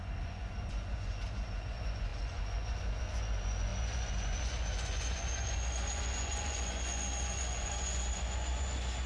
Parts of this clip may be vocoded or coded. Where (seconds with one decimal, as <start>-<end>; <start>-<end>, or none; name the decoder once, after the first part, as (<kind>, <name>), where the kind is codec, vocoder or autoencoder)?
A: 0.0-9.1 (vocoder, Vocos)